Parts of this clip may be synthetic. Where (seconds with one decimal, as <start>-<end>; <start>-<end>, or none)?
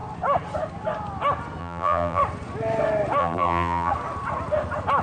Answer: 1.6-2.2; 3.2-3.9